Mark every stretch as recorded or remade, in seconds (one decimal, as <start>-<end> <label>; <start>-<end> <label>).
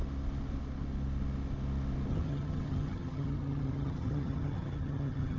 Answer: 0.0-2.1 recorded; 2.1-5.4 remade